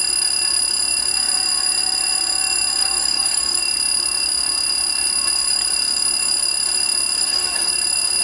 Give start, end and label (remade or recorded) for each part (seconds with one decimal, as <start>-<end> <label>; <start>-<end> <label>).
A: 0.0-2.8 recorded; 2.8-3.6 remade; 3.6-7.2 recorded; 7.2-7.7 remade; 7.7-8.2 recorded